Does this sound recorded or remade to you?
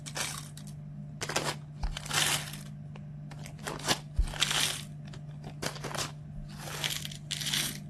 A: recorded